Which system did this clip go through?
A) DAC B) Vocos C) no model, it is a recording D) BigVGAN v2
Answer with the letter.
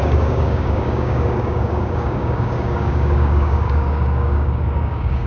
A